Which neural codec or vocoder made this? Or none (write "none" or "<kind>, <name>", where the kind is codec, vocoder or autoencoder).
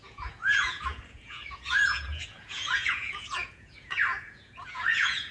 vocoder, Vocos